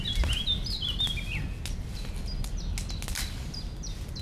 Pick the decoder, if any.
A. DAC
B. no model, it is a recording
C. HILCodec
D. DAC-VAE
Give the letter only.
B